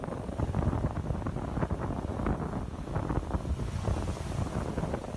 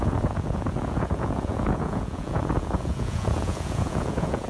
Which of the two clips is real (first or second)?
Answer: first